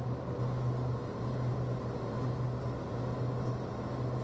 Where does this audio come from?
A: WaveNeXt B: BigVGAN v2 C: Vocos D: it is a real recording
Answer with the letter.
D